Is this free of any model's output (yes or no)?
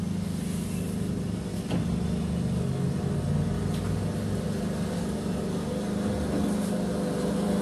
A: yes